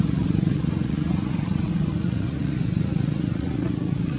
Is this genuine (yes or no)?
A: no